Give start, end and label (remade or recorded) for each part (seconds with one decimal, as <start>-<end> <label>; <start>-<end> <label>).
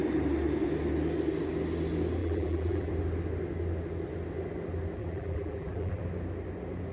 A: 0.0-2.2 recorded; 2.2-2.9 remade; 2.9-5.0 recorded; 5.0-6.0 remade; 6.0-6.9 recorded